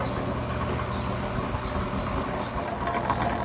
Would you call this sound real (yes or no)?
yes